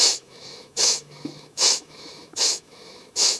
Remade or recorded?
remade